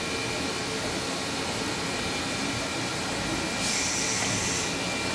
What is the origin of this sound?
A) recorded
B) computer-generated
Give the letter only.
A